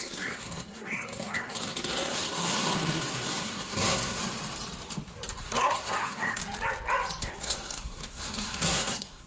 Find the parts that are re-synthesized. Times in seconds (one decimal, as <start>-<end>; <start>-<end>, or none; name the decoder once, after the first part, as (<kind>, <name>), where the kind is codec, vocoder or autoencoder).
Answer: 0.0-4.2 (codec, SNAC); 5.4-6.4; 7.2-9.3